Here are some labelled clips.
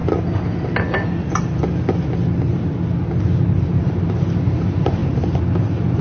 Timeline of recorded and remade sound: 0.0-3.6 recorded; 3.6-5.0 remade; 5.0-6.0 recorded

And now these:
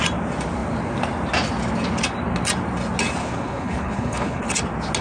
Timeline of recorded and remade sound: 0.0-3.2 recorded; 3.2-4.4 remade; 4.4-5.0 recorded

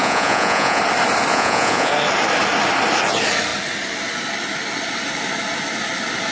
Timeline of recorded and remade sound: 0.0-0.8 remade; 0.8-1.3 recorded; 1.3-1.9 remade; 1.9-6.3 recorded

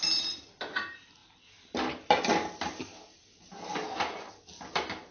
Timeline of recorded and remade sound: 0.0-5.1 recorded

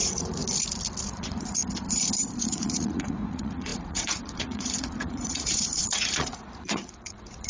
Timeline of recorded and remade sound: 0.0-0.4 remade; 0.4-1.0 recorded; 1.0-1.6 remade; 1.6-2.4 recorded; 2.4-7.5 remade

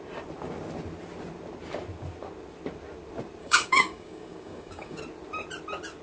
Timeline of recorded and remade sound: 0.0-3.4 recorded; 3.4-5.0 remade; 5.0-6.0 recorded

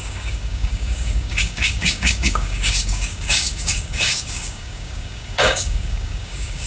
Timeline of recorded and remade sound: 0.0-6.7 remade